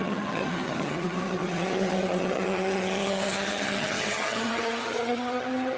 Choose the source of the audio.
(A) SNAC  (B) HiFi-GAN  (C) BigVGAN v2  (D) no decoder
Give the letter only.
B